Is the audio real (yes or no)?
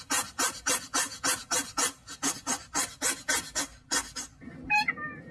yes